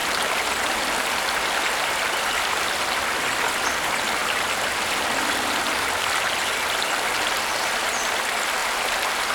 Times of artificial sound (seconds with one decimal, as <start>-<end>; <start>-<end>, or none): 0.0-0.9; 4.2-7.5; 8.6-9.3